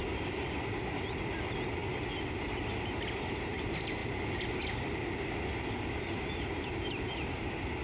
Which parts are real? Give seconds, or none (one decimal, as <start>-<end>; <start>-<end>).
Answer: 0.0-7.8